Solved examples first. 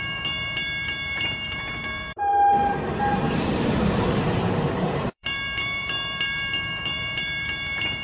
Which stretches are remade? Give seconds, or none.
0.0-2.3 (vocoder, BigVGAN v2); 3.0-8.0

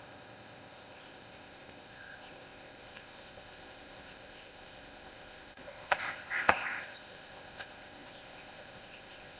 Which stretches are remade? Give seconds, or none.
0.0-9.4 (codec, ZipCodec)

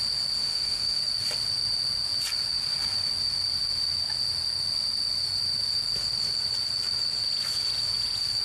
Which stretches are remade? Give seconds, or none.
0.4-1.0 (autoencoder, DAC-VAE)

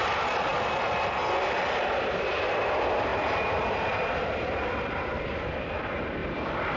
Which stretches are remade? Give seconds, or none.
0.0-0.5 (vocoder, BigVGAN v2); 2.3-3.1; 4.2-6.8

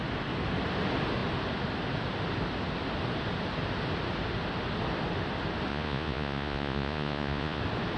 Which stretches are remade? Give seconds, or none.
5.7-7.6 (vocoder, Vocos)

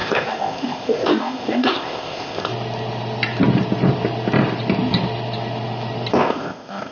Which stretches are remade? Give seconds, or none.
0.0-2.5 (codec, ZipCodec); 6.1-6.9

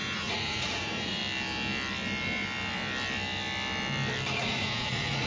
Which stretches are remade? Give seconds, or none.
0.0-1.2 (vocoder, Vocos); 4.4-5.3